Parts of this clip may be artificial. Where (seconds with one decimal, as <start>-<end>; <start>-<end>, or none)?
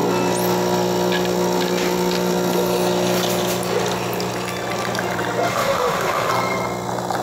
5.5-6.3